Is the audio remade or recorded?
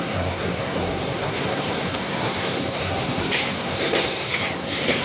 remade